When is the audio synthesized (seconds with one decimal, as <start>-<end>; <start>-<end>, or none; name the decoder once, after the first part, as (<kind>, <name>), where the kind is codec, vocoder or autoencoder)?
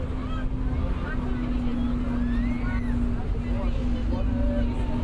none